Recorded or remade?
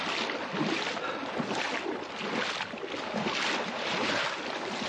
recorded